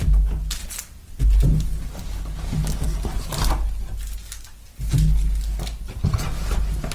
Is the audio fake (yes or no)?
no